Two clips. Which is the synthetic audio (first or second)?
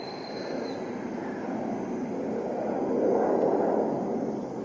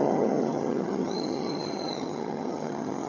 second